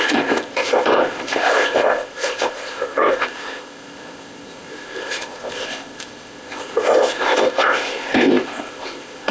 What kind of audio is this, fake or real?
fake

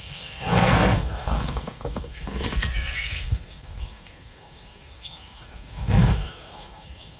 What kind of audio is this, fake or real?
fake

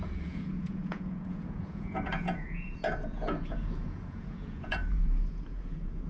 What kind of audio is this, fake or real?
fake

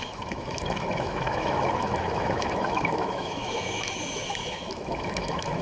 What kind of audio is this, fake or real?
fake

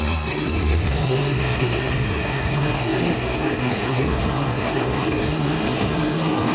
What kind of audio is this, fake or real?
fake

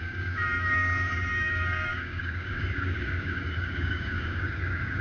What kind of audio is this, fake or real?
fake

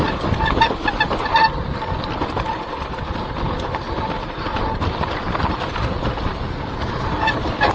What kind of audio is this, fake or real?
real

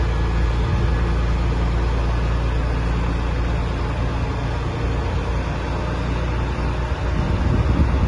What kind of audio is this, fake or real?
real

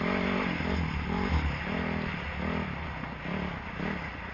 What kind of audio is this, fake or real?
real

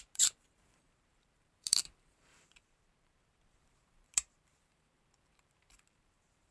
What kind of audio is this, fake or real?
fake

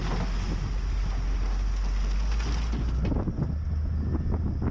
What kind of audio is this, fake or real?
real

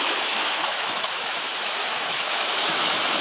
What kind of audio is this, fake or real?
fake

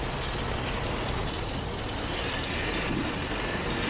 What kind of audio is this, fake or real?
real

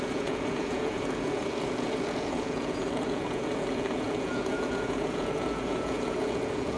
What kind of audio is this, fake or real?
fake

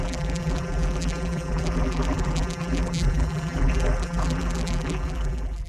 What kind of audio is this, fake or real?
fake